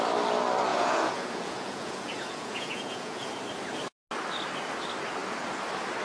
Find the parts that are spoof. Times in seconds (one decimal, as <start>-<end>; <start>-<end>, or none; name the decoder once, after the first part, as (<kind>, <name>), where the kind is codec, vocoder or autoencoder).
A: 0.7-3.3 (vocoder, Vocos)